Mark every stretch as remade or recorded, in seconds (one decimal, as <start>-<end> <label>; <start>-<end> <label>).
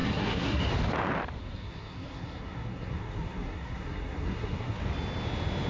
0.0-0.6 remade; 0.6-1.4 recorded; 1.4-4.8 remade; 4.8-5.7 recorded